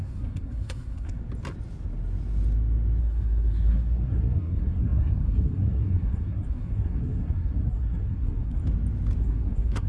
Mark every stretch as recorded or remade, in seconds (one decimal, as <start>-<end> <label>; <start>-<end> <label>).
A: 0.0-1.2 remade; 1.2-3.0 recorded; 3.0-8.6 remade; 8.6-9.2 recorded; 9.2-9.9 remade